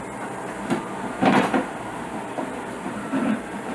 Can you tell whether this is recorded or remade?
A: remade